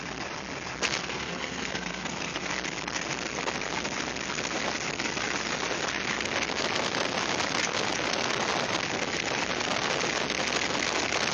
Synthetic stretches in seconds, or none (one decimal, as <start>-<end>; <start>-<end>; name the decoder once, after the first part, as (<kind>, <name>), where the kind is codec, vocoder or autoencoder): 1.0-2.5 (codec, SNAC)